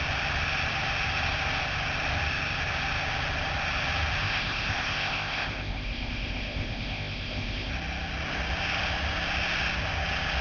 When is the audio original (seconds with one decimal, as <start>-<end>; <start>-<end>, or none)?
0.0-4.2; 7.7-10.4